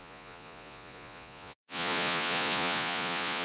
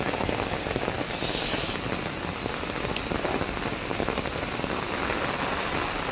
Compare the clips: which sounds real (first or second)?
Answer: second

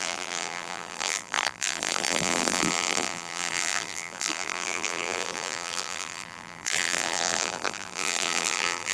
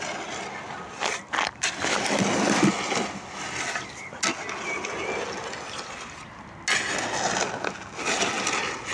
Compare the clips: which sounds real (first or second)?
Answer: second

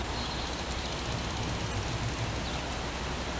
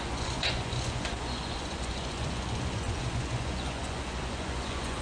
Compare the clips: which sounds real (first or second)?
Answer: first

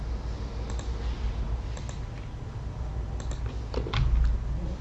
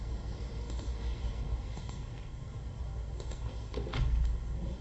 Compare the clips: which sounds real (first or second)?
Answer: first